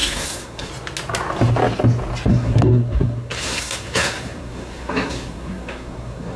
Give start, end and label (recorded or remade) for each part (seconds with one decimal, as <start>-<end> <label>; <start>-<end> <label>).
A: 0.0-0.7 remade; 0.7-2.3 recorded; 2.3-6.4 remade